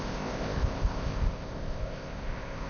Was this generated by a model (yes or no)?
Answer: yes